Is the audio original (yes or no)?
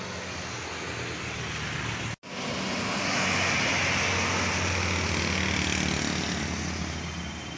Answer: yes